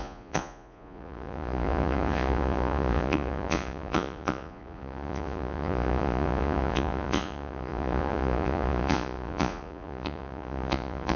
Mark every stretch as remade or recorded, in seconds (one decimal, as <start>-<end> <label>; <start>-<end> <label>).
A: 0.0-11.2 remade